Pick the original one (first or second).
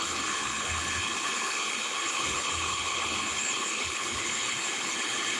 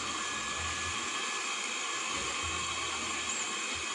second